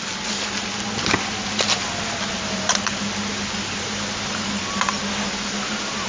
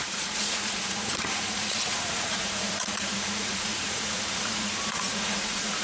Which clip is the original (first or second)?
first